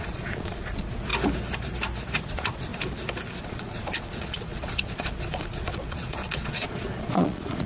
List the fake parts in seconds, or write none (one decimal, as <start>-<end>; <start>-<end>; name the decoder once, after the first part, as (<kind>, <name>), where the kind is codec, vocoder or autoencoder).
0.0-1.1 (vocoder, Vocos); 2.3-2.7; 3.4-7.7